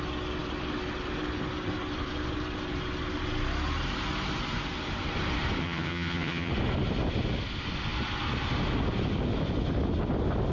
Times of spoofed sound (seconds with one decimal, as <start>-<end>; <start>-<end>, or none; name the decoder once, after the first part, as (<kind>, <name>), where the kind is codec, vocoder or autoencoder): 5.6-6.5 (vocoder, HiFi-GAN)